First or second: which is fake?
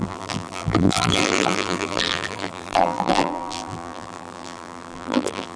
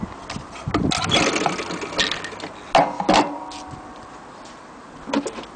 first